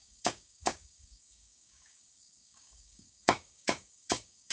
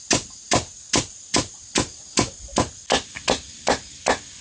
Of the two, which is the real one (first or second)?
second